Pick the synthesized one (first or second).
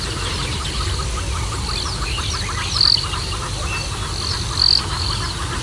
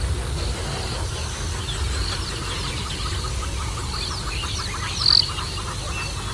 first